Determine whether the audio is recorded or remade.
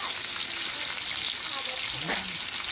recorded